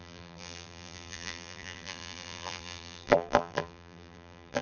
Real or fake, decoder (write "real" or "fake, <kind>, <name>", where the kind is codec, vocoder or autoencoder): fake, vocoder, BigVGAN v2